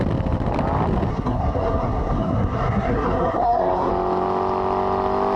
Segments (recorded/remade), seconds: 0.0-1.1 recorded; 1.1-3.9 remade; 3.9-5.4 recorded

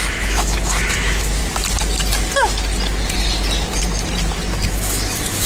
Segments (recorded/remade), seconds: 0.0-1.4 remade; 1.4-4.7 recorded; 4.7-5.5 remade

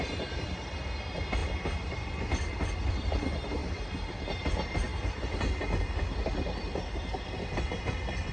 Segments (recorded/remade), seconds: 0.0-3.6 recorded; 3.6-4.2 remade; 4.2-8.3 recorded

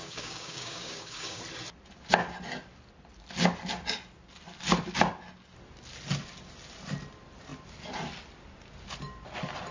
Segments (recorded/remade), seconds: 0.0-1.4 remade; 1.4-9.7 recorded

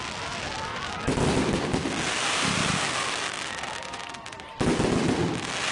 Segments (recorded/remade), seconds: 0.0-5.7 recorded

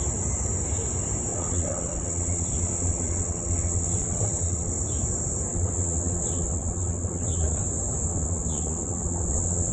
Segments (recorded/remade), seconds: 0.0-1.3 recorded; 1.3-4.7 remade; 4.7-5.5 recorded; 5.5-7.6 remade; 7.6-8.1 recorded; 8.1-9.7 remade